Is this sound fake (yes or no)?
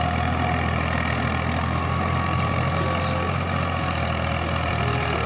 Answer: no